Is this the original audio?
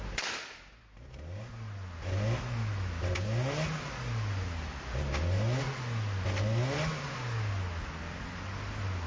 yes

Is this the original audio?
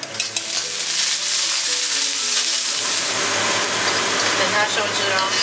yes